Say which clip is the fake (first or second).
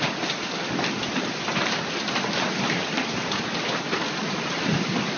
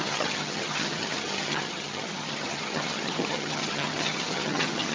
second